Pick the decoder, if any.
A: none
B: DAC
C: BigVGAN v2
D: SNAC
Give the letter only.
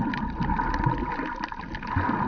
A